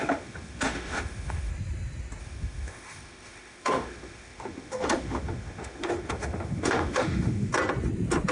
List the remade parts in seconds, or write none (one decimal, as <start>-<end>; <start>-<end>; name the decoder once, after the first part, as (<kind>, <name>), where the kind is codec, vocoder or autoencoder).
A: 0.0-1.5 (autoencoder, DAC-VAE); 2.2-7.5